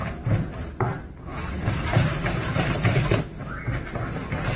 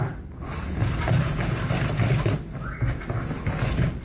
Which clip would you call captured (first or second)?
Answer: second